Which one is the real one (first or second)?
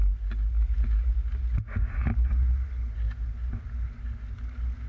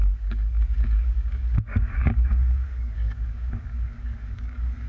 first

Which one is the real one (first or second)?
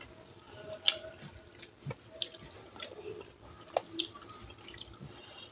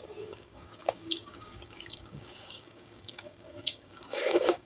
first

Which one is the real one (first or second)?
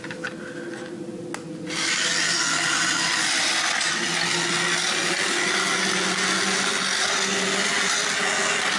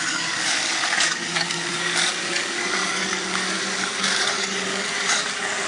first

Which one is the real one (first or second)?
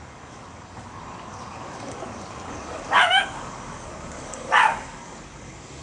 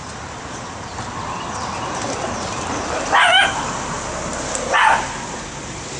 second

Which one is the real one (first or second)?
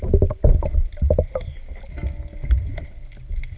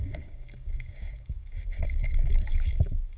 first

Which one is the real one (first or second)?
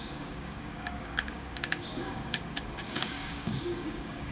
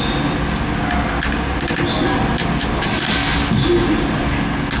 second